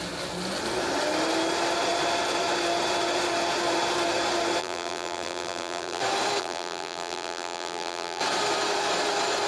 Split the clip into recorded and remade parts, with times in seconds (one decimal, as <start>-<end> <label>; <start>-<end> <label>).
0.0-4.6 recorded; 4.6-6.0 remade; 6.0-6.4 recorded; 6.4-8.2 remade; 8.2-9.5 recorded